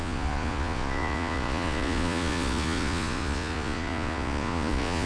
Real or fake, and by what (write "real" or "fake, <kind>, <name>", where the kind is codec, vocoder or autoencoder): fake, vocoder, Vocos